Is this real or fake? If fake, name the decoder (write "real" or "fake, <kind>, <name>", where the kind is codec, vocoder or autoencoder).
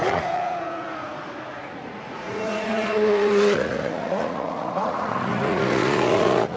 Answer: fake, vocoder, Vocos